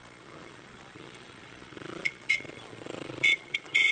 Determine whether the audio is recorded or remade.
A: remade